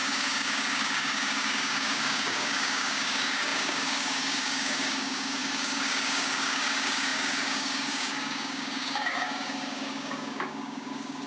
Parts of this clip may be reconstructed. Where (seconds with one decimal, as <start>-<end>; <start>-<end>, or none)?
0.0-11.3